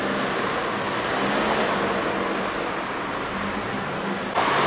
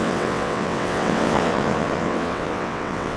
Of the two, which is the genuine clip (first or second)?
first